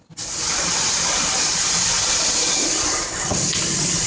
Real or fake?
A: real